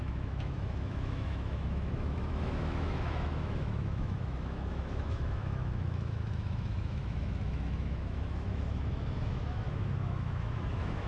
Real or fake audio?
fake